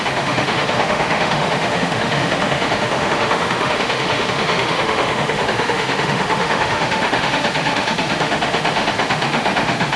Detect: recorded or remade remade